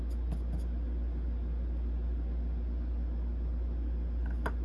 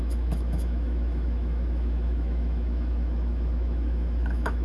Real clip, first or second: first